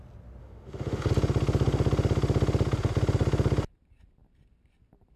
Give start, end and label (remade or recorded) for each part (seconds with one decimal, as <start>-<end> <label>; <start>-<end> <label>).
0.0-0.4 recorded; 0.4-1.1 remade; 1.1-5.2 recorded